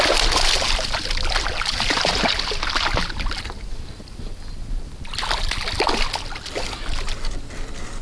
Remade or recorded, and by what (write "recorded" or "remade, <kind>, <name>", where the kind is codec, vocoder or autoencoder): recorded